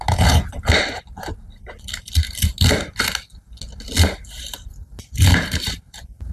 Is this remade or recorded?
recorded